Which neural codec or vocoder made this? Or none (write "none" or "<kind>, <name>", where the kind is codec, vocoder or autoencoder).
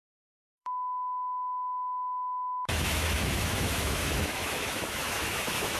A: autoencoder, DAC-VAE